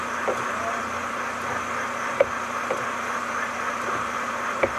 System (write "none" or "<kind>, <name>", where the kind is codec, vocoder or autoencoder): none